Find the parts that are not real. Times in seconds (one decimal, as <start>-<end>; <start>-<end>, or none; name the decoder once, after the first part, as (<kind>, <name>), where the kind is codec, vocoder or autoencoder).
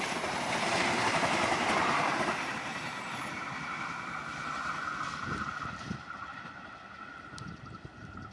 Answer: 0.0-2.7 (vocoder, BigVGAN v2); 5.4-6.3; 7.2-8.3